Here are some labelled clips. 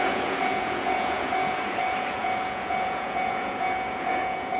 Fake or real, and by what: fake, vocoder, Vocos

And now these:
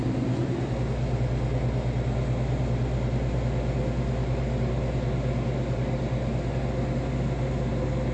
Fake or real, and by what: real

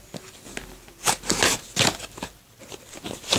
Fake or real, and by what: real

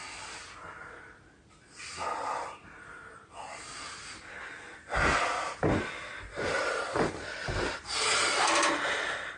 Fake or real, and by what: real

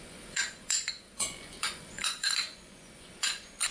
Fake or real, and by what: fake, vocoder, Vocos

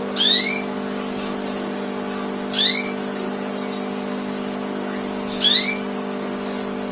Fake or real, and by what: real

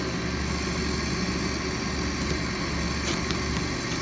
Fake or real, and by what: real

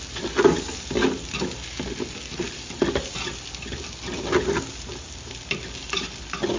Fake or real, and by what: real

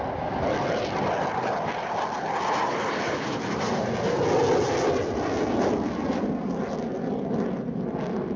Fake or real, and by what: real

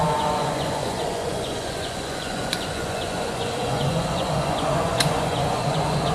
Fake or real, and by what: fake, vocoder, Vocos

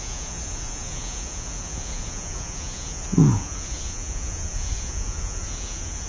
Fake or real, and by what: fake, vocoder, Vocos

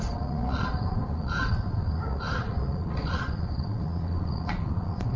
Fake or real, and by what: fake, vocoder, Vocos